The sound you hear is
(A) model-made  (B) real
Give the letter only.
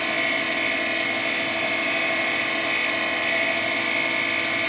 B